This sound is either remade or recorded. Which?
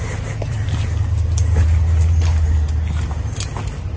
recorded